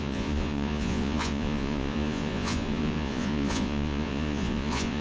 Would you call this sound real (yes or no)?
no